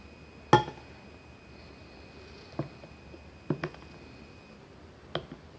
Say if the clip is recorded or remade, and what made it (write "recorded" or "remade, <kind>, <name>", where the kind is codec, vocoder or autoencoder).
recorded